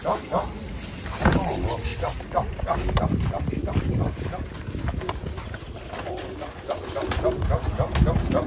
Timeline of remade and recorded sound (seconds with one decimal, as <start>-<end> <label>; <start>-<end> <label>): 0.0-8.5 recorded